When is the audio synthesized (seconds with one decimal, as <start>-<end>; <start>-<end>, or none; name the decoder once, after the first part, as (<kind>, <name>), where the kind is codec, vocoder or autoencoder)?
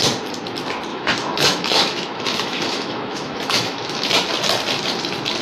0.9-4.1 (autoencoder, DAC-VAE)